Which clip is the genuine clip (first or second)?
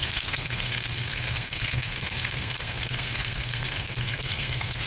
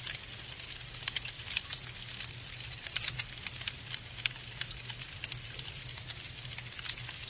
second